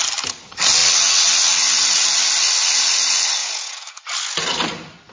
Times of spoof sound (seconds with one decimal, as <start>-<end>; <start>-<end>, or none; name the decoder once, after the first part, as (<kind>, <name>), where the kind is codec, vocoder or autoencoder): 3.4-4.0 (vocoder, Vocos)